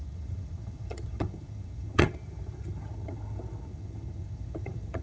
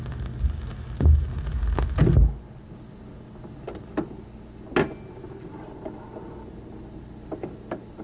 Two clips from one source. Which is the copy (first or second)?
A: first